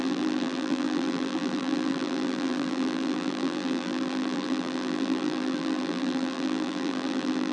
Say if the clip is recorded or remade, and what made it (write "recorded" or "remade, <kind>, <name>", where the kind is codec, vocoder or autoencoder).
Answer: remade, vocoder, BigVGAN v2